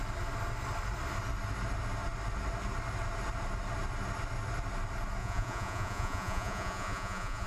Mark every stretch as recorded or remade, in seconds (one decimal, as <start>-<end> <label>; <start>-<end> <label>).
0.0-5.2 recorded; 5.2-7.5 remade